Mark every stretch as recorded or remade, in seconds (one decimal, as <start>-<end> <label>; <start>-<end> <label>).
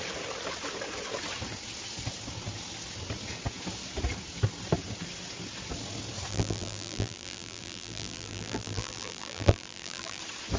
0.0-6.3 recorded; 6.3-10.2 remade; 10.2-10.6 recorded